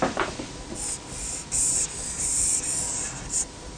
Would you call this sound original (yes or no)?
yes